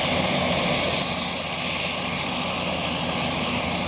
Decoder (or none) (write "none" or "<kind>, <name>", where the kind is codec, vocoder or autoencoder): none